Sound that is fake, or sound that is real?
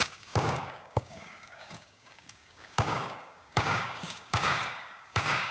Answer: fake